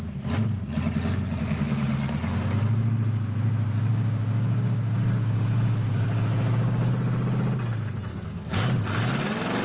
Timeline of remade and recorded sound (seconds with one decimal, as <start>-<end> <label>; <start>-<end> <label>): 0.0-1.4 recorded; 1.4-1.9 remade; 1.9-3.9 recorded; 3.9-6.9 remade; 6.9-8.1 recorded; 8.1-8.8 remade; 8.8-9.6 recorded